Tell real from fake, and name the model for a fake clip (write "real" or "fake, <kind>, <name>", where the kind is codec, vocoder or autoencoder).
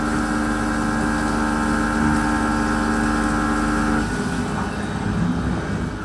real